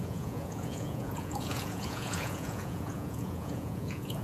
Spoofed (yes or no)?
yes